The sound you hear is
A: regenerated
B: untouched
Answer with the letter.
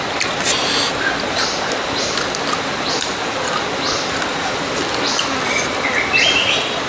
B